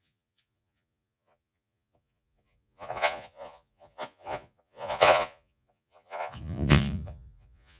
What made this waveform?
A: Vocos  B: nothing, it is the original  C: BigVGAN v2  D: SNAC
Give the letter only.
A